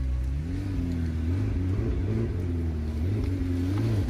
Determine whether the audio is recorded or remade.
recorded